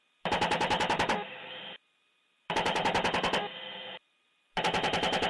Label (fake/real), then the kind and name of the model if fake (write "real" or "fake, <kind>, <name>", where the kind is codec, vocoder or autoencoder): fake, vocoder, BigVGAN v2